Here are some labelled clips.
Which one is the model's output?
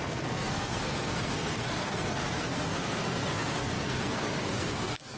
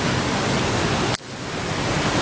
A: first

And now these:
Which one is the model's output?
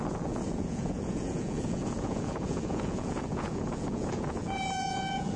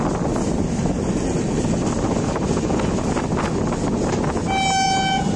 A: first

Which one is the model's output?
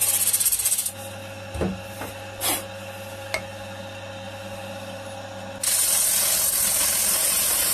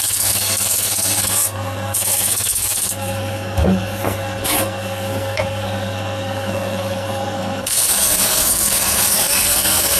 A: second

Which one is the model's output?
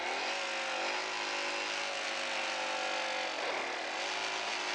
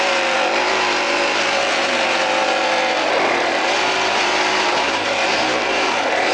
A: second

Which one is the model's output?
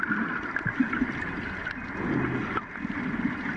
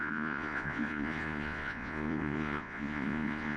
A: second